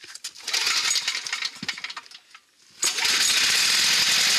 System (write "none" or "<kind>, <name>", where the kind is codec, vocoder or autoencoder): none